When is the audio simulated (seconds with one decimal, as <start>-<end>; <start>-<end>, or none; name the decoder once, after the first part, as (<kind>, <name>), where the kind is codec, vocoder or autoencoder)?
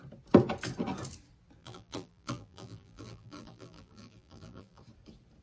1.6-4.8 (vocoder, BigVGAN v2)